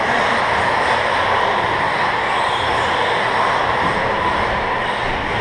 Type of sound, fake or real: real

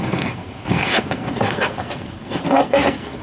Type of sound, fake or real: fake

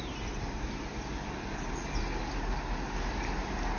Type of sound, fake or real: real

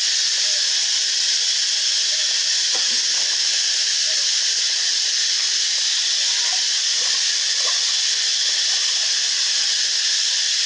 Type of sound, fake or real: real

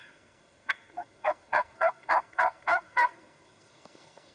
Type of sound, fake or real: fake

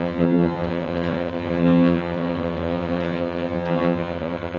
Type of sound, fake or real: fake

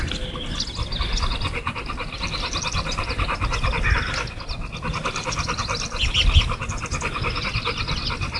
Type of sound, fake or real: real